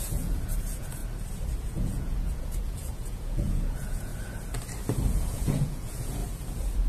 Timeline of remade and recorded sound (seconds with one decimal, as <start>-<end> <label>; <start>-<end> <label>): 0.0-1.0 remade; 1.0-1.6 recorded; 1.6-4.1 remade; 4.1-5.1 recorded; 5.1-6.2 remade; 6.2-6.9 recorded